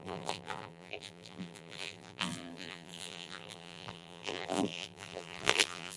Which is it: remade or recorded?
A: remade